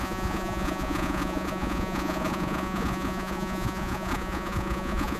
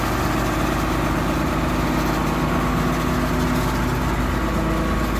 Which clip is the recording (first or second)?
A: second